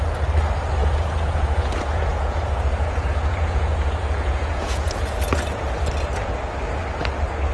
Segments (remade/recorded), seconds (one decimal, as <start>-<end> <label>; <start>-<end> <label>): 0.0-0.8 recorded; 0.8-5.3 remade; 5.3-7.5 recorded